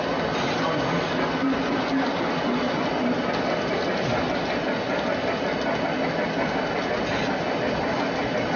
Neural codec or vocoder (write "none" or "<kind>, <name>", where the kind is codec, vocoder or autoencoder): none